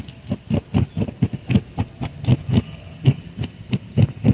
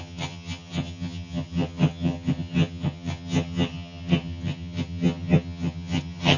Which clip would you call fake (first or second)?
second